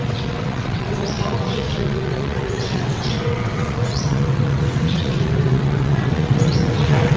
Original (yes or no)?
no